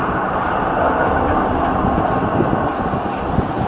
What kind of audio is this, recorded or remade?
recorded